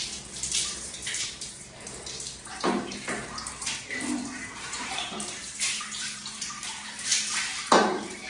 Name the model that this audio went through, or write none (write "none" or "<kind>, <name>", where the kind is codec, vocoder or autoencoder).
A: vocoder, BigVGAN v2